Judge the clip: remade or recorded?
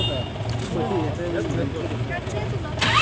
recorded